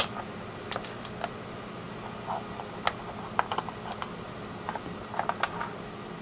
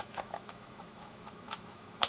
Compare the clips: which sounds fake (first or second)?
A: second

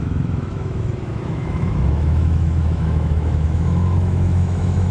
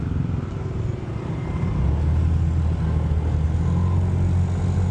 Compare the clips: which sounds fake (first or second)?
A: first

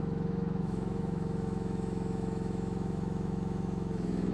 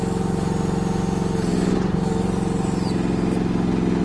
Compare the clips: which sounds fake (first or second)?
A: first